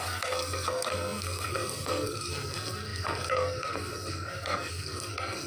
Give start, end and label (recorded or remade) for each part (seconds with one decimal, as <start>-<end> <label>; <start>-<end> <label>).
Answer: 0.0-5.5 remade